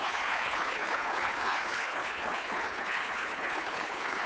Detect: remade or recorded remade